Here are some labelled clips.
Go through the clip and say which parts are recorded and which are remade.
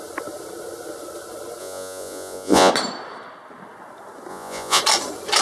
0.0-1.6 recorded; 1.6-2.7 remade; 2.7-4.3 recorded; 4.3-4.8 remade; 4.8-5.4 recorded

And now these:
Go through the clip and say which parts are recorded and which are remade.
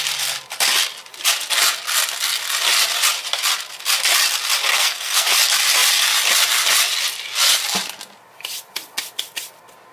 0.0-4.7 recorded; 4.7-5.3 remade; 5.3-9.9 recorded